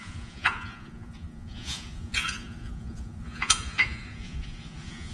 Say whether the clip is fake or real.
fake